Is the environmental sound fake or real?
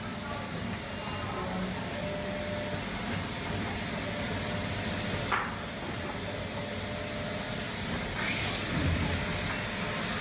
real